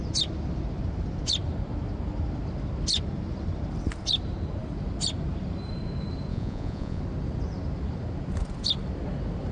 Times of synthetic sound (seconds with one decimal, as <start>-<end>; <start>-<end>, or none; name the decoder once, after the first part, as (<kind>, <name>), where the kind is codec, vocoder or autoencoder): 6.3-7.0 (vocoder, Vocos)

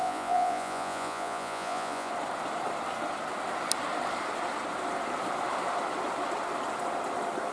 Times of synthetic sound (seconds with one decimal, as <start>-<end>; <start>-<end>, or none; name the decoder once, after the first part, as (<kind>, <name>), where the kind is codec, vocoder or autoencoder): 0.0-2.1 (vocoder, Vocos)

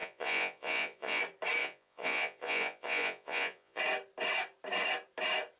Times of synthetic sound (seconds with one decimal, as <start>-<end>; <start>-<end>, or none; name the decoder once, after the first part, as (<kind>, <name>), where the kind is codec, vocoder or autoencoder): 0.0-1.2 (vocoder, Vocos); 1.6-3.8

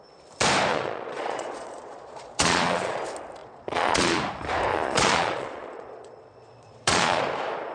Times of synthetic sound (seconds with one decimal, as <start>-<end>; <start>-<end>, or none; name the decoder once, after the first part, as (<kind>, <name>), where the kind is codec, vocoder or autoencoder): 0.7-3.0 (vocoder, Vocos); 3.4-4.2; 4.7-7.2